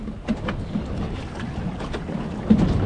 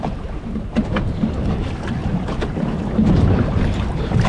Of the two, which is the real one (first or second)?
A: first